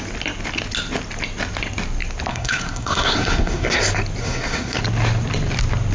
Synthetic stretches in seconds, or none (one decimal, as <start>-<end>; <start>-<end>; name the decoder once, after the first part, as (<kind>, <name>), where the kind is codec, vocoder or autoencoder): 2.3-3.8 (codec, SNAC); 4.2-4.8